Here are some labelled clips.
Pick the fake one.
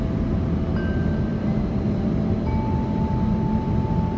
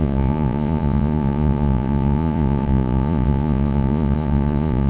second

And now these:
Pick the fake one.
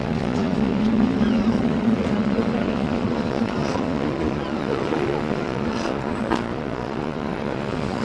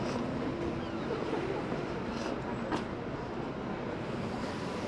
first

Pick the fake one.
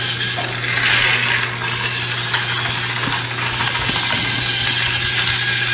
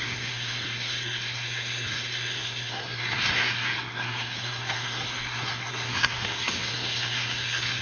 second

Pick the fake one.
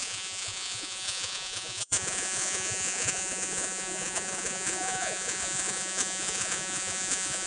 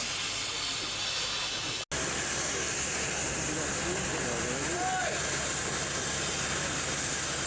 first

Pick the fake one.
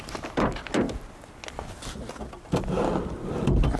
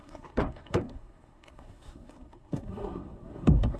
second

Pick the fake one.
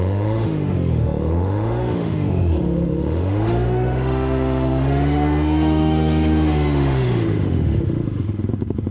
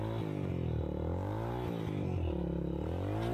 first